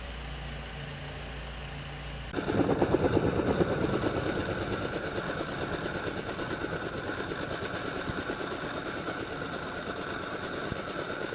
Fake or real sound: real